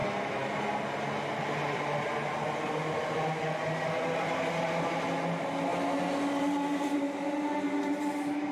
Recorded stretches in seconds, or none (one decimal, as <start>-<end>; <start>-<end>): 0.0-8.5